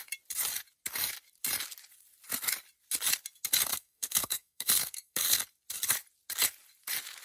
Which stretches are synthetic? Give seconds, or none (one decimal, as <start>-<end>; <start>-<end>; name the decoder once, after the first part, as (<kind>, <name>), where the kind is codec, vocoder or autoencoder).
3.7-5.4 (codec, SNAC)